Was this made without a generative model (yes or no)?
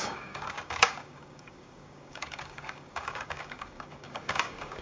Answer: no